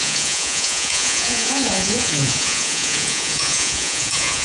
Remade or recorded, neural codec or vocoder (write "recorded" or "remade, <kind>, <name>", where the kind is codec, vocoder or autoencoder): remade, vocoder, Vocos